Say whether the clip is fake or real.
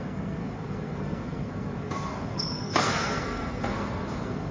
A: fake